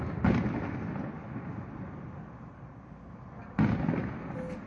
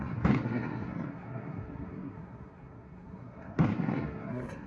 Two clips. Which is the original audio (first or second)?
first